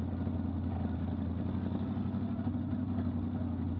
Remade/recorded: recorded